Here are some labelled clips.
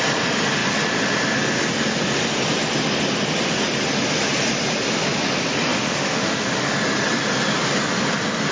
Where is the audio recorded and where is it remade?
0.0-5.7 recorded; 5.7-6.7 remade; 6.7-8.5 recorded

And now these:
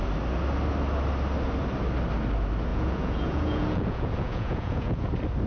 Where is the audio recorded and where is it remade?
0.0-2.7 recorded; 2.7-5.1 remade; 5.1-5.5 recorded

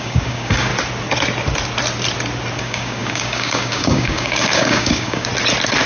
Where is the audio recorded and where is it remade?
0.0-0.7 remade; 0.7-2.6 recorded; 2.6-5.3 remade; 5.3-5.9 recorded

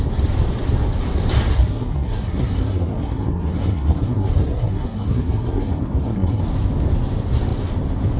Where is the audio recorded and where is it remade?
0.0-1.5 recorded; 1.5-6.4 remade; 6.4-8.2 recorded

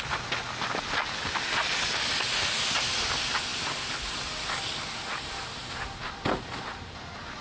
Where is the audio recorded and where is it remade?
0.0-7.4 recorded

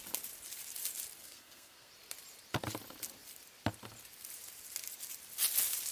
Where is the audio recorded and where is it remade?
0.0-1.2 recorded; 1.2-1.9 remade; 1.9-5.9 recorded

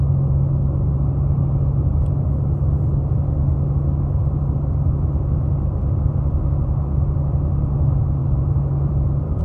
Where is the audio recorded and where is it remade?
0.0-9.4 recorded